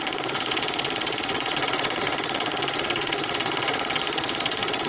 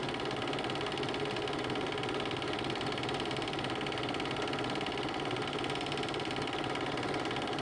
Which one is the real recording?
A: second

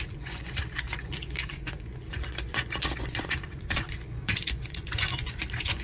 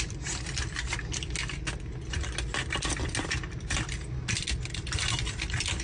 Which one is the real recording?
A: second